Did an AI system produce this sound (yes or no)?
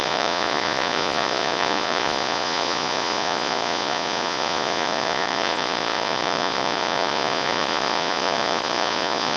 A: yes